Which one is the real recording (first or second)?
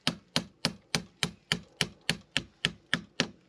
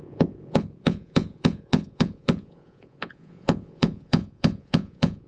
first